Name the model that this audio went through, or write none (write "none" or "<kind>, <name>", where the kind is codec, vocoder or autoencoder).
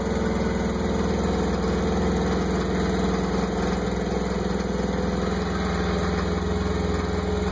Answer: none